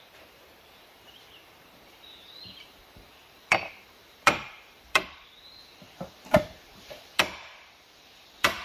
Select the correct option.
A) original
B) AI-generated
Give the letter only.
B